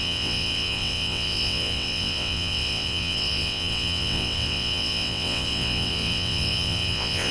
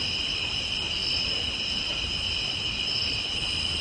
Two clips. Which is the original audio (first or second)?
second